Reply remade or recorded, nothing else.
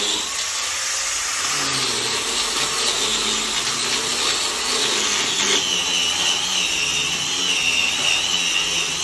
recorded